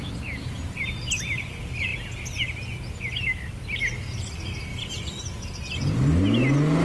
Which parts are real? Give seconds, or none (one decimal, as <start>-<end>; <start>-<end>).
0.0-4.7; 5.6-6.8